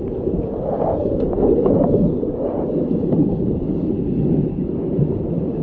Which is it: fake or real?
real